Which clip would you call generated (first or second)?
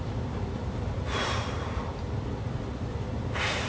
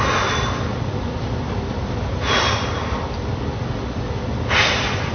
first